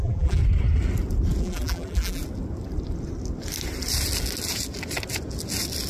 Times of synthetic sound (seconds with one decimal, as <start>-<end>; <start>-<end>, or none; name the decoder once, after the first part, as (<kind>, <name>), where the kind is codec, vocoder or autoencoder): 0.0-0.4 (vocoder, BigVGAN v2); 1.4-2.2